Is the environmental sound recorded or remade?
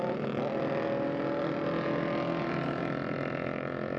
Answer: recorded